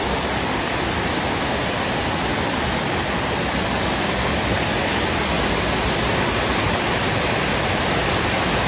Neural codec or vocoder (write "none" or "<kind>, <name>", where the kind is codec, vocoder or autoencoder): none